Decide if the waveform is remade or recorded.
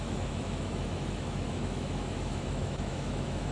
remade